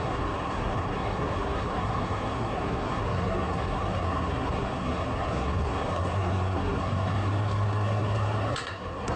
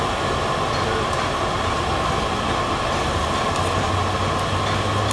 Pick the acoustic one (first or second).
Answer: second